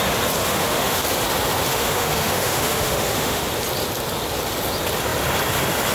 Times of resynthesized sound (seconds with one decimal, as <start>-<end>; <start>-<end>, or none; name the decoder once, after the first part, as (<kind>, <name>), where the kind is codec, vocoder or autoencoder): 0.4-1.0 (autoencoder, DAC-VAE); 1.7-3.4